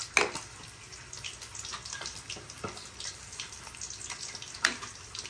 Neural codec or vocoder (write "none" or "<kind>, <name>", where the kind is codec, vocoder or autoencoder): none